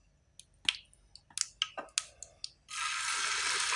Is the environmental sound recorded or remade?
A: recorded